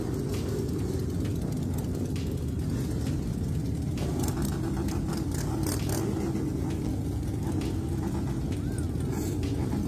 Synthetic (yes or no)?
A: no